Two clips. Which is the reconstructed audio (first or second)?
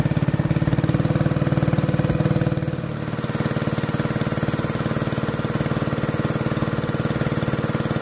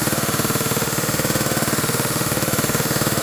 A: second